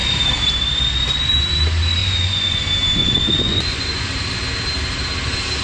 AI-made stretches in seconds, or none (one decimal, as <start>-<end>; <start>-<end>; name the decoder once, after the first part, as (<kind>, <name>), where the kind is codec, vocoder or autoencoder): 2.0-2.6 (vocoder, Vocos); 3.0-4.0

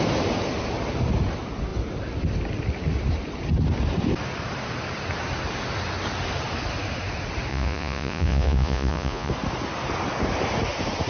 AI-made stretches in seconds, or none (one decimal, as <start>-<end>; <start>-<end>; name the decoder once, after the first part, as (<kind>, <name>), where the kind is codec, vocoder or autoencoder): 7.5-9.3 (vocoder, Vocos)

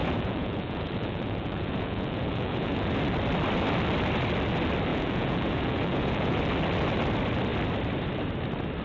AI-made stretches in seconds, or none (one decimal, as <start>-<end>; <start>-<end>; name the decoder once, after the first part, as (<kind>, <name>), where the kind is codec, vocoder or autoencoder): 0.0-2.9 (vocoder, Vocos); 4.9-6.4

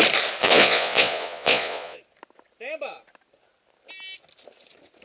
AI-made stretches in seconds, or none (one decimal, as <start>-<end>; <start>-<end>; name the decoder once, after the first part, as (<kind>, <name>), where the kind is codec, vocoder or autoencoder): 0.4-2.0 (vocoder, Vocos)

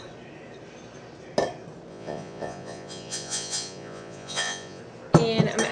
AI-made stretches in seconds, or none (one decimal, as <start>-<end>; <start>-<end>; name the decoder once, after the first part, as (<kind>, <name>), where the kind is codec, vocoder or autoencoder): 1.9-4.8 (vocoder, Vocos)

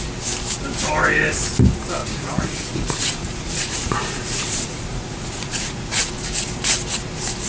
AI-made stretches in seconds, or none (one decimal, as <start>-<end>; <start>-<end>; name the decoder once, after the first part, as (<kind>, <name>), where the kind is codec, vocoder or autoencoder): 2.0-6.1 (vocoder, Vocos)

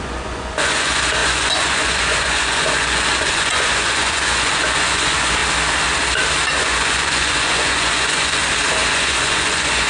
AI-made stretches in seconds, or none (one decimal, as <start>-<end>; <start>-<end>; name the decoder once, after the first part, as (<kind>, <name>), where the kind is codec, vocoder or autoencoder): 0.0-5.4 (vocoder, Vocos); 6.6-8.4; 8.9-9.9